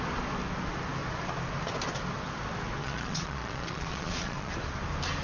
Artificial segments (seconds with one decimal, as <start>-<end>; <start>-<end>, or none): 2.8-4.5